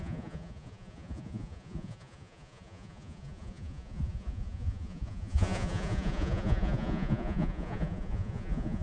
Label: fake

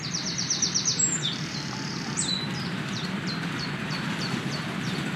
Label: fake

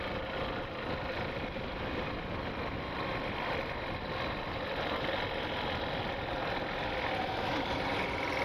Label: real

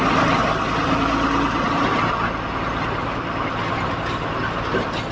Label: real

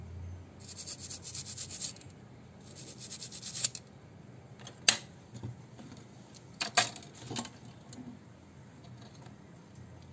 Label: real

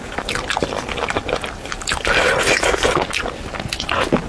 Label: real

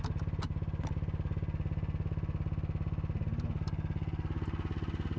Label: real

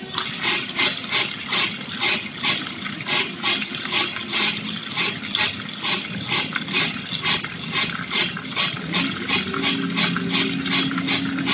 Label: real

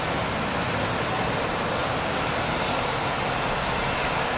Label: real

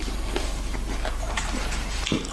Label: fake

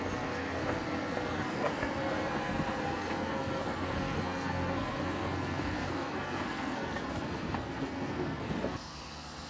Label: fake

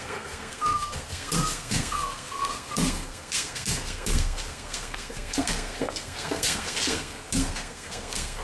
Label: fake